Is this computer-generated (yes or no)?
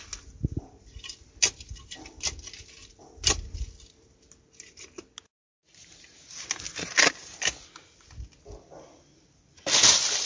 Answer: no